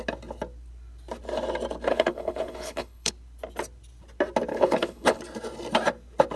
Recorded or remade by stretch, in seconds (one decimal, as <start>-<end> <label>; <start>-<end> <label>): 0.0-1.9 recorded; 1.9-3.1 remade; 3.1-4.5 recorded; 4.5-5.2 remade; 5.2-6.4 recorded